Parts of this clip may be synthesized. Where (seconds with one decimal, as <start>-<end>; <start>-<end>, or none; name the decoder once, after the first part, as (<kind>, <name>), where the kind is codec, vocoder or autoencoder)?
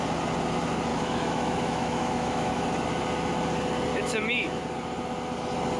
0.9-2.5 (autoencoder, DAC-VAE); 3.9-4.6